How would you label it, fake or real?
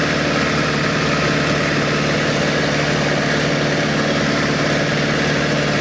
real